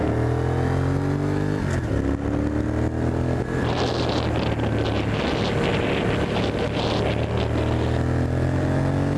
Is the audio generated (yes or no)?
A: no